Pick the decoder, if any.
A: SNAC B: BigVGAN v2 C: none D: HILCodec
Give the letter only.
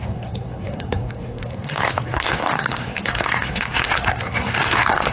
A